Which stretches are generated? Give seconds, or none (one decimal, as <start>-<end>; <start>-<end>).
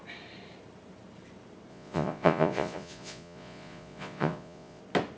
1.7-4.8